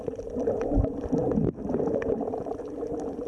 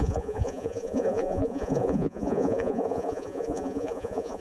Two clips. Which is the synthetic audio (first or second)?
second